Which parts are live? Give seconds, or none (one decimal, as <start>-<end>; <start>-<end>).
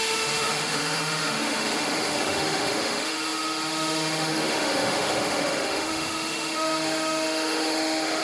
none